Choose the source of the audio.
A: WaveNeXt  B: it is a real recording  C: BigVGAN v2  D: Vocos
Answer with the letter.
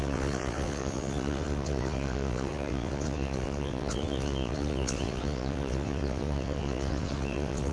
A